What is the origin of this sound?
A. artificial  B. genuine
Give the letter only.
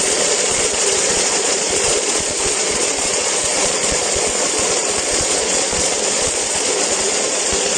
A